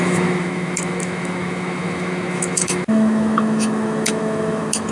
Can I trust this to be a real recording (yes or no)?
no